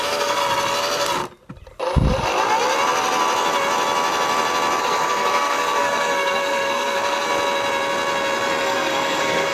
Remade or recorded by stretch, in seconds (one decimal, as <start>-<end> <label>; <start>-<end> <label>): 0.0-0.4 remade; 0.4-4.8 recorded; 4.8-7.3 remade; 7.3-8.6 recorded; 8.6-9.5 remade